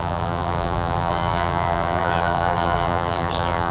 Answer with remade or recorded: remade